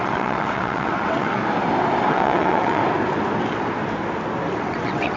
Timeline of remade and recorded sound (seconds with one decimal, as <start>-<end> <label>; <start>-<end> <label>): 0.0-1.4 remade; 1.4-2.1 recorded; 2.1-2.8 remade; 2.8-4.6 recorded; 4.6-5.2 remade